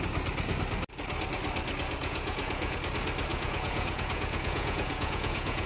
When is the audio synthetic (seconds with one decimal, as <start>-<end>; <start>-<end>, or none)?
2.0-2.8; 3.3-5.7